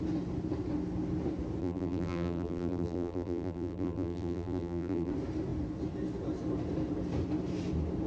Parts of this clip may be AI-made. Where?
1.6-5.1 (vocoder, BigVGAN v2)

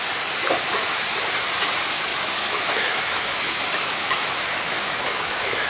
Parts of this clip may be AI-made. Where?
2.1-5.7 (autoencoder, DAC-VAE)

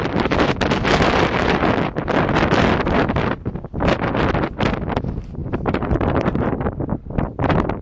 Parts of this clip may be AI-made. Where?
5.4-6.5 (vocoder, BigVGAN v2)

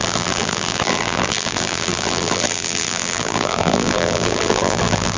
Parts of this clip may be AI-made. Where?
0.0-5.2 (vocoder, BigVGAN v2)

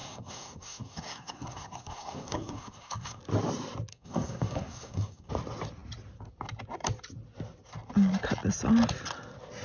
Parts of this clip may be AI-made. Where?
0.0-3.2 (codec, SNAC); 3.9-5.3

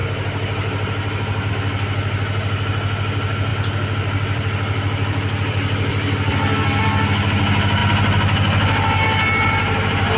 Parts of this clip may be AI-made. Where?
3.5-6.8 (vocoder, BigVGAN v2)

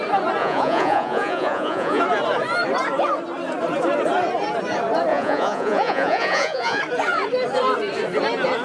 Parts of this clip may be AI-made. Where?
0.4-2.0 (vocoder, Vocos); 5.1-6.8